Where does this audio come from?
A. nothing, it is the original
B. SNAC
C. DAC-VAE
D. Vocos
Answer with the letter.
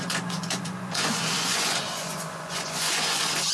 D